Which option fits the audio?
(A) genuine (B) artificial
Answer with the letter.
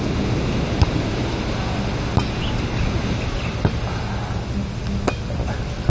A